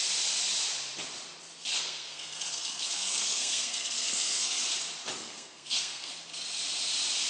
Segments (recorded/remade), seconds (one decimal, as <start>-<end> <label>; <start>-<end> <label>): 0.0-1.7 recorded; 1.7-4.6 remade; 4.6-5.2 recorded; 5.2-6.1 remade; 6.1-7.3 recorded